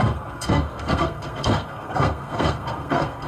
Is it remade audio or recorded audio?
remade